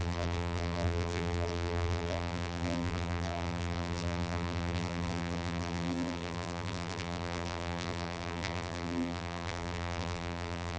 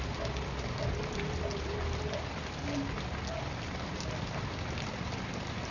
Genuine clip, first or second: second